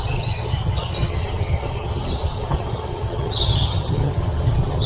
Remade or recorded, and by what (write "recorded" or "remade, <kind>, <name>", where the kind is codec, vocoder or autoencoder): remade, vocoder, HiFi-GAN